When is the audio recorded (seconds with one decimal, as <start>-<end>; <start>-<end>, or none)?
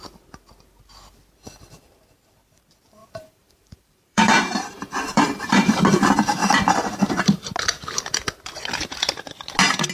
0.0-3.0; 5.8-6.4; 7.0-9.9